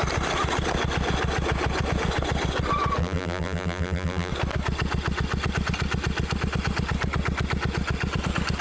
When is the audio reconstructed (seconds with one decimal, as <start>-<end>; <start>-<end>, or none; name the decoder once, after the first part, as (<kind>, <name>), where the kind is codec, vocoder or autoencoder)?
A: 3.0-4.3 (vocoder, BigVGAN v2)